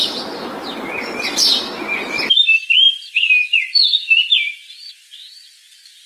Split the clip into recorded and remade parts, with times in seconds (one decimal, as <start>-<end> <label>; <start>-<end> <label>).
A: 0.0-2.1 recorded; 2.1-6.1 remade